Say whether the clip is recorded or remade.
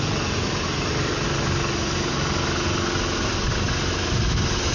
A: recorded